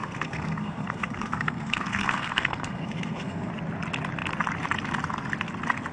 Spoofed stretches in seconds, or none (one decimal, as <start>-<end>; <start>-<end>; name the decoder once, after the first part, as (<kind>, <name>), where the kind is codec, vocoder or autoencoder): 0.0-3.5 (codec, SNAC)